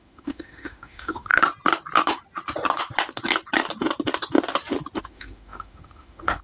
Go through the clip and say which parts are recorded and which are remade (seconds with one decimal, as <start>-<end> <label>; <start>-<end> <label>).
0.0-1.3 remade; 1.3-5.0 recorded; 5.0-6.4 remade